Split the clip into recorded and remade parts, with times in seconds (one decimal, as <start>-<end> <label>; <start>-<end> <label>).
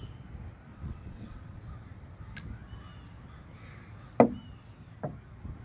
0.0-0.7 recorded; 0.7-1.6 remade; 1.6-5.6 recorded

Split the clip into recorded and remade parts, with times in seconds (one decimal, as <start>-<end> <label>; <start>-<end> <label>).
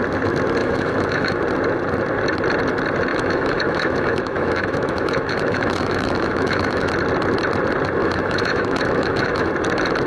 0.0-0.6 recorded; 0.6-1.4 remade; 1.4-3.1 recorded; 3.1-6.9 remade; 6.9-8.0 recorded; 8.0-9.5 remade; 9.5-10.1 recorded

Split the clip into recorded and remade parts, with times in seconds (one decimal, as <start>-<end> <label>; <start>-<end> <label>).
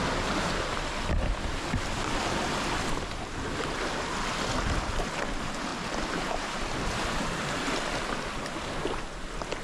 0.0-5.7 recorded; 5.7-7.5 remade; 7.5-9.6 recorded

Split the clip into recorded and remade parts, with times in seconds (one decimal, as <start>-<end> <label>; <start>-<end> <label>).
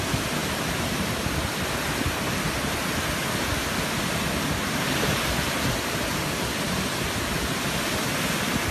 0.0-8.7 recorded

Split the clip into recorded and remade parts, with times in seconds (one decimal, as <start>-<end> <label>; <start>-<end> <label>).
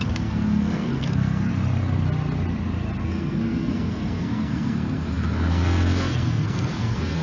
0.0-1.5 remade; 1.5-3.0 recorded; 3.0-7.2 remade